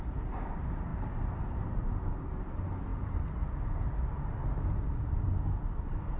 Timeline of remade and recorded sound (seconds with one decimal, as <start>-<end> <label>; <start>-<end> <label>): 0.0-6.2 recorded